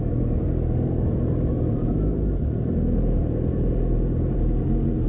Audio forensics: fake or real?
fake